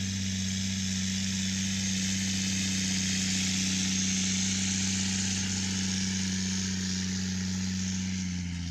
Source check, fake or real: real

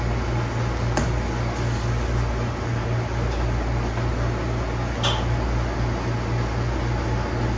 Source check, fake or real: real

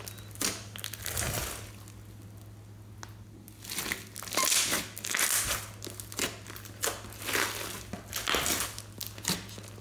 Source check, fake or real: real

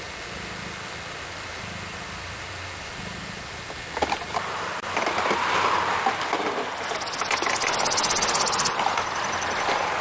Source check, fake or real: real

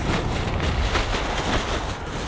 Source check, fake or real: real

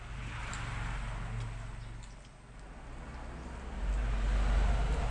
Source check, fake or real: real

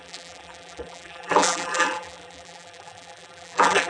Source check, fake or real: fake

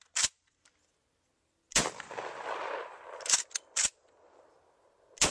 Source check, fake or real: real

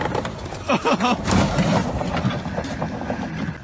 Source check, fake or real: real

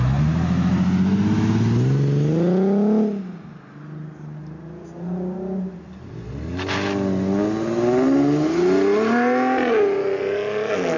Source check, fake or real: real